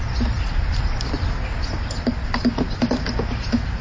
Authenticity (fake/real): real